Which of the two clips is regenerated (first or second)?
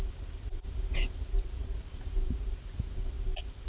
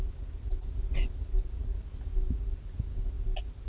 first